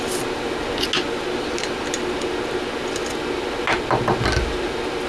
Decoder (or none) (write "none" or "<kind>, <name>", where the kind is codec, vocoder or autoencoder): none